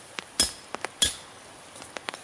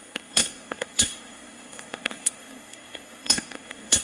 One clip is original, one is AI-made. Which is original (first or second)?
first